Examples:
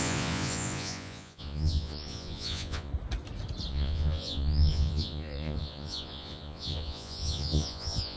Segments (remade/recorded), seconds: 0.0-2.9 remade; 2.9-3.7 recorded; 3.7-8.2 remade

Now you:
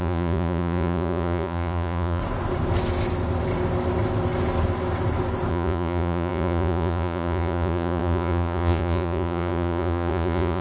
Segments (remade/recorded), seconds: 0.0-2.2 remade; 2.2-5.5 recorded; 5.5-10.6 remade